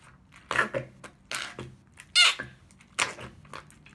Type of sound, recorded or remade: recorded